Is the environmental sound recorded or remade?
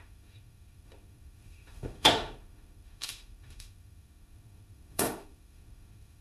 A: remade